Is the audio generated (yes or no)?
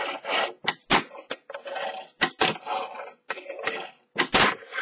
no